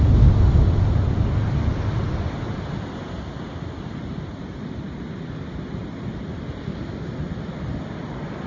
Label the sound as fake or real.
real